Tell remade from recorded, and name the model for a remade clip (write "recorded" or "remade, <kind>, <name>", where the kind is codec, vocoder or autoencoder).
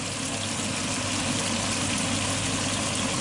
recorded